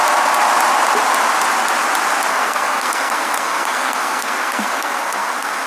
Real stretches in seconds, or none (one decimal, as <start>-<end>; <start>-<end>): 0.0-2.3